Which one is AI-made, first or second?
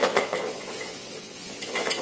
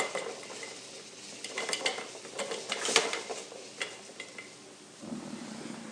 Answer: first